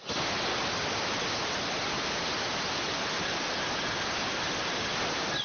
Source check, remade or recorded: recorded